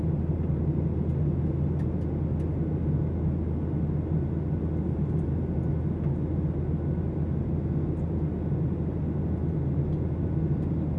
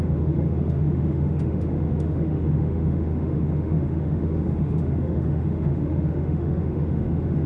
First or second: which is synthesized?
second